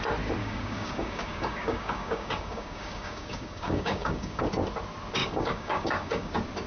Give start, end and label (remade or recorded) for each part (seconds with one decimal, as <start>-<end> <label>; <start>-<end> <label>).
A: 0.0-0.4 recorded; 0.4-4.4 remade; 4.4-5.2 recorded; 5.2-6.3 remade; 6.3-6.7 recorded